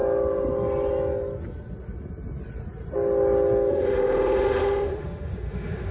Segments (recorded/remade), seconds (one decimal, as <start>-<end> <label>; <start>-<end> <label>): 0.0-3.7 recorded; 3.7-5.9 remade